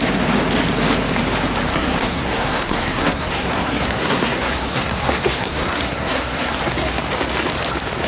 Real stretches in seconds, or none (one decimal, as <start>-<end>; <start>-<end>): 0.0-1.7; 6.6-8.1